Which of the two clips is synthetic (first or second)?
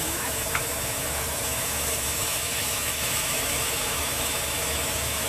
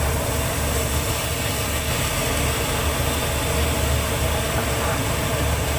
first